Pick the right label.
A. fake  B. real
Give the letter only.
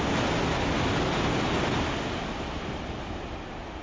B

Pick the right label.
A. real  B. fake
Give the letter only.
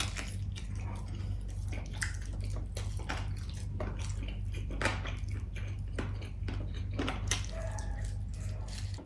A